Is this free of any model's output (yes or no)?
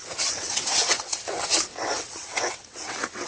no